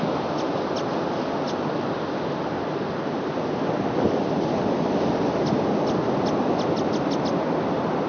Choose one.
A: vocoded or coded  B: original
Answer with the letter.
B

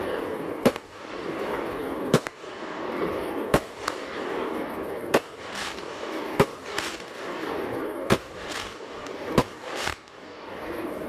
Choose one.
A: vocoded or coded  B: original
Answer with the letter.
A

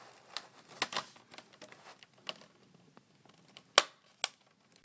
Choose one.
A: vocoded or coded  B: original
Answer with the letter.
B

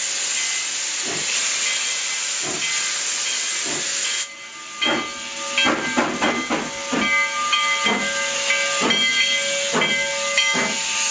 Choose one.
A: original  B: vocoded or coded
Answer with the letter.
A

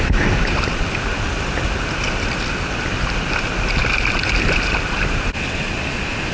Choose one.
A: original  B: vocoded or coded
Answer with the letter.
A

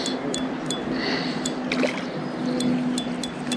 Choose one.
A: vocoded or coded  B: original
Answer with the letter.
B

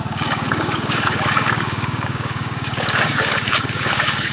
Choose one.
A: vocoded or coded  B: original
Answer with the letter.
A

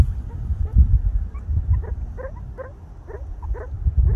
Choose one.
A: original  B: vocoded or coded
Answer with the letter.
A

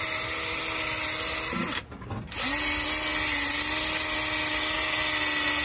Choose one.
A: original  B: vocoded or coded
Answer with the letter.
A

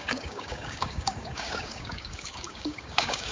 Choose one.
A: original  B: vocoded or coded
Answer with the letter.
B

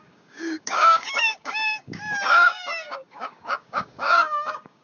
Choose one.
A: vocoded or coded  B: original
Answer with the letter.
A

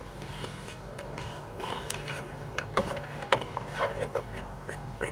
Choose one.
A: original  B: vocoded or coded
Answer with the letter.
B